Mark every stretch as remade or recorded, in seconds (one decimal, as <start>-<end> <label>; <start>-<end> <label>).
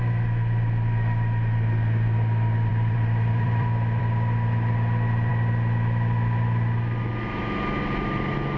0.0-2.7 recorded; 2.7-4.0 remade; 4.0-8.6 recorded